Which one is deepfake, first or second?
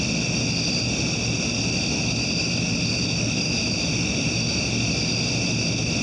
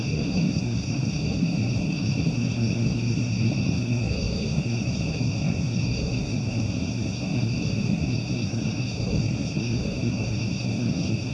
second